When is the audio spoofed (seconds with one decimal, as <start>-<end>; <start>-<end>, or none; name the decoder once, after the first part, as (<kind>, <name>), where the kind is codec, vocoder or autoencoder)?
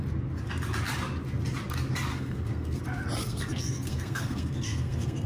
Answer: 2.1-2.8 (codec, SNAC); 3.2-5.3